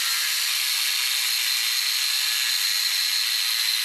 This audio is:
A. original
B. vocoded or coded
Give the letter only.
A